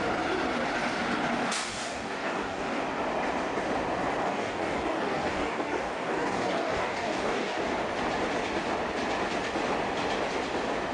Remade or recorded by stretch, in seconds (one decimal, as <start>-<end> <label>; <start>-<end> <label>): 0.0-1.4 recorded; 1.4-2.8 remade; 2.8-4.2 recorded; 4.2-7.6 remade; 7.6-10.9 recorded